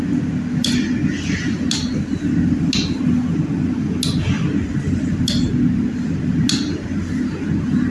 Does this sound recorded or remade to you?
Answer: recorded